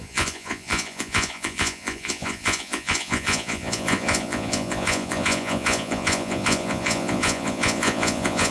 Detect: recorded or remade remade